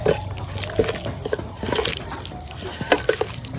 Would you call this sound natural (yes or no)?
yes